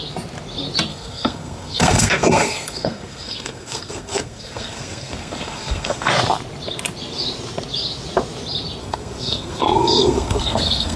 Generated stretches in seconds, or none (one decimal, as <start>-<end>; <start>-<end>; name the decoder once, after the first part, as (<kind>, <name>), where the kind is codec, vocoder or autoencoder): 0.9-6.1 (codec, SNAC); 8.8-11.0